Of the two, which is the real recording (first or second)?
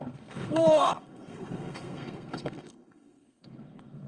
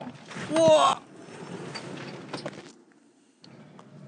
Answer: second